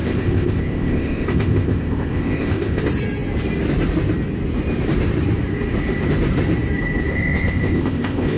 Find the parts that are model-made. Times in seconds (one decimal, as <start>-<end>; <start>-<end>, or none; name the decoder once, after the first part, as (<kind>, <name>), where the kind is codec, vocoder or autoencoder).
0.0-2.8 (codec, ZipCodec); 7.1-8.4